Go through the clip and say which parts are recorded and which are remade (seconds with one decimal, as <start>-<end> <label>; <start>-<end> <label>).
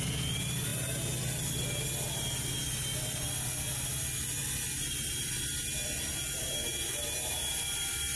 0.0-8.2 recorded